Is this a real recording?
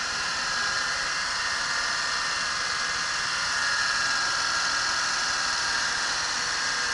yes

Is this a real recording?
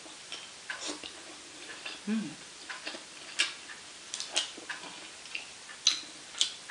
yes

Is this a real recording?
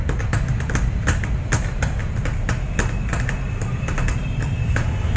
yes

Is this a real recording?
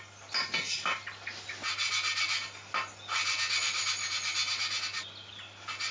yes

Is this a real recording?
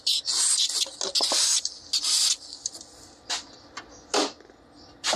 yes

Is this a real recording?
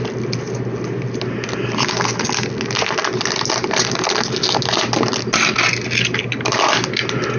yes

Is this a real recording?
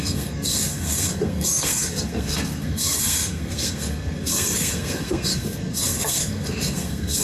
no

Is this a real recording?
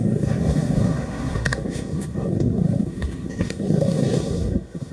no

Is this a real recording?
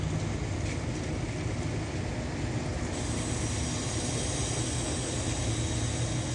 yes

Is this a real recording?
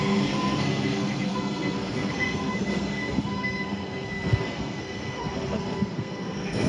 no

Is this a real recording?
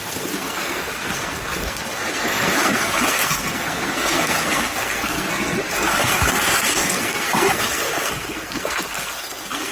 no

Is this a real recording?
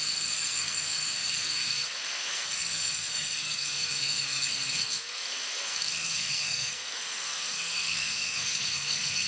no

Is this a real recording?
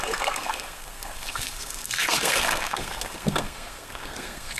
no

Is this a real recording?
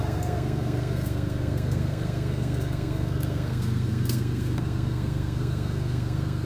no